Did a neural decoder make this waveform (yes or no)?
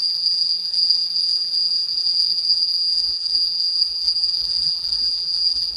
yes